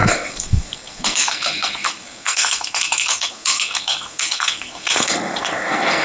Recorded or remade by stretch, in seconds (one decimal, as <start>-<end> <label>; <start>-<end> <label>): 0.0-6.0 remade